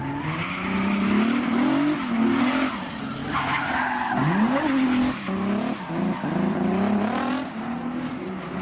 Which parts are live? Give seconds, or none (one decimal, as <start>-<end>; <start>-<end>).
0.0-8.6